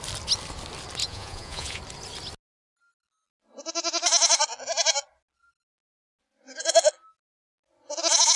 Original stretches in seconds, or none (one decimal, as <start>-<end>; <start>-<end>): 0.0-1.0; 1.8-8.4